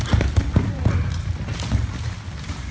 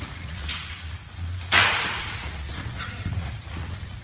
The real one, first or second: first